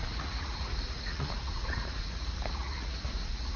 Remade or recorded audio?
remade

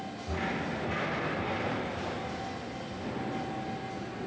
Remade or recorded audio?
recorded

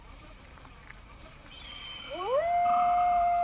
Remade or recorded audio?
remade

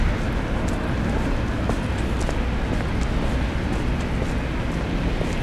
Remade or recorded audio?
recorded